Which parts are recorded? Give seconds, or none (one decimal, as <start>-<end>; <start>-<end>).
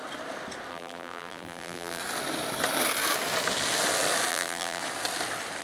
0.0-0.7; 2.0-4.3; 4.8-5.6